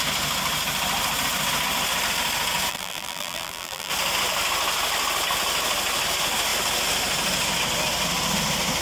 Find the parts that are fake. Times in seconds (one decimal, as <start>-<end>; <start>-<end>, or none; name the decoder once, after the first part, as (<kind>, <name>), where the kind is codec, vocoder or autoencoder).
2.7-3.9 (vocoder, BigVGAN v2)